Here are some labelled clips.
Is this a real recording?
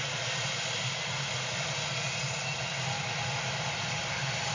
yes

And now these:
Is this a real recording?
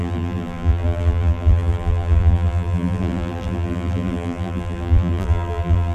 no